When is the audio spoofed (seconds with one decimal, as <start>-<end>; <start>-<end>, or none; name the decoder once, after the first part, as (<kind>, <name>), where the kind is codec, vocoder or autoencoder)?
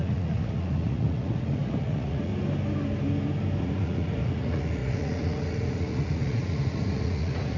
0.0-2.3 (vocoder, Vocos); 3.6-7.6